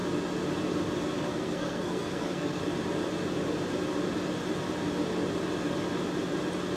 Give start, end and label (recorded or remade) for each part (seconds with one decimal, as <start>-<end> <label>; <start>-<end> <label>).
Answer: 0.0-1.3 recorded; 1.3-2.6 remade; 2.6-6.8 recorded